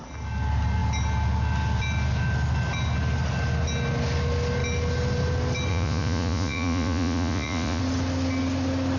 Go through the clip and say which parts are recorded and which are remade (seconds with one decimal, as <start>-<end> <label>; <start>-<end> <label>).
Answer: 0.0-5.7 recorded; 5.7-7.8 remade; 7.8-9.0 recorded